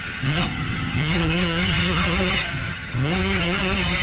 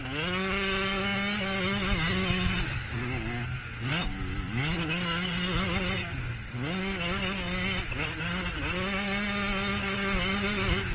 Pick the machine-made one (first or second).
first